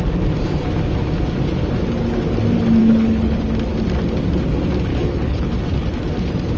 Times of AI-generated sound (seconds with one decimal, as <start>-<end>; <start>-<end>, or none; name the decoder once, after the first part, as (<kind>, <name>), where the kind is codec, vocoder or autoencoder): 2.8-3.4 (codec, HILCodec); 4.9-5.5